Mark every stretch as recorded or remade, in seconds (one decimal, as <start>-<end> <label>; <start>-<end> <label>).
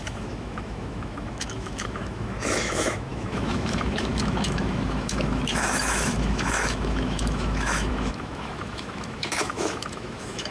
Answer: 0.0-10.5 remade